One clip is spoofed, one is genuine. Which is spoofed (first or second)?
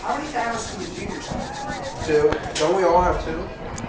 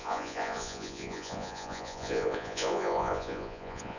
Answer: second